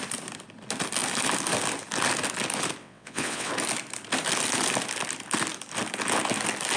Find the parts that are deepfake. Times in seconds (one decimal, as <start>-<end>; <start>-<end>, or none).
2.8-3.5